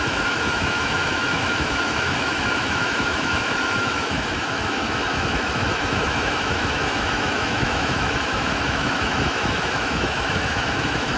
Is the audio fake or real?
fake